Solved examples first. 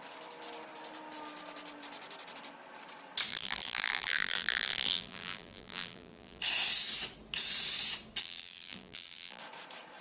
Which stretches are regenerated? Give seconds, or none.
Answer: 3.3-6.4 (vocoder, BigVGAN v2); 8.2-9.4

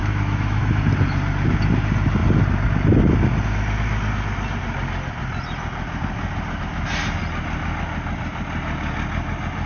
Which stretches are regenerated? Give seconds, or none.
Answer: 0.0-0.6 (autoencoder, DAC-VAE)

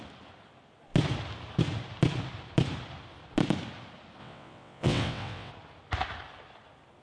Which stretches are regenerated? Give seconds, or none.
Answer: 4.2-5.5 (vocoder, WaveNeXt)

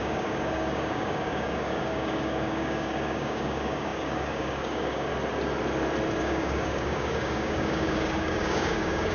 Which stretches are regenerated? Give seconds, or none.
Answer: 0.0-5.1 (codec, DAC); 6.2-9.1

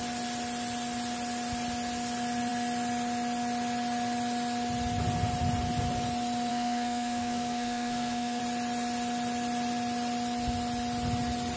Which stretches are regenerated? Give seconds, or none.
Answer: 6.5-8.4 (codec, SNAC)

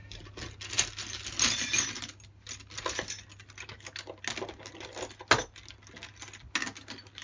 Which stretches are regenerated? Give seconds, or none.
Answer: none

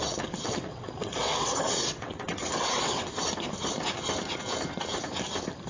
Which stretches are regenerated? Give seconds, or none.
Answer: 0.0-3.2 (vocoder, WaveNeXt)